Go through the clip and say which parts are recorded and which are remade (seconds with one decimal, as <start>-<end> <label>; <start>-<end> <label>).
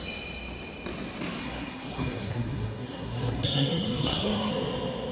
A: 0.0-1.4 recorded; 1.4-4.5 remade; 4.5-5.1 recorded